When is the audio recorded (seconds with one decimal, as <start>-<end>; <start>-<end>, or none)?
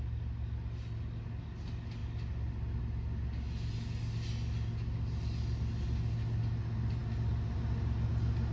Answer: 0.0-8.5